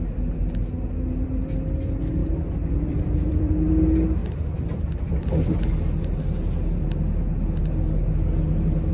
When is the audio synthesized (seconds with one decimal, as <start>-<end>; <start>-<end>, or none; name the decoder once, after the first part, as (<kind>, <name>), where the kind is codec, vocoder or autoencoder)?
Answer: 2.2-3.7 (vocoder, BigVGAN v2)